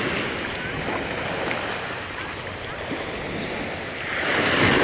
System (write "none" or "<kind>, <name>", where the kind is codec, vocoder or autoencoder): none